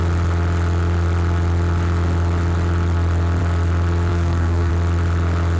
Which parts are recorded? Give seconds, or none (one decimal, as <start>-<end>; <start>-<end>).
0.0-4.1; 4.7-5.6